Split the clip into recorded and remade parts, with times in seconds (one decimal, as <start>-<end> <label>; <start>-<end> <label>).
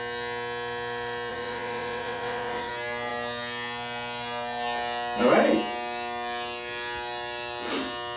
0.0-1.3 recorded; 1.3-2.7 remade; 2.7-8.2 recorded